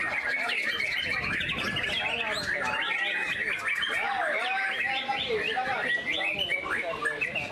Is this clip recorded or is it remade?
recorded